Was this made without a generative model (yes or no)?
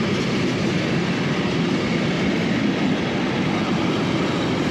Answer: no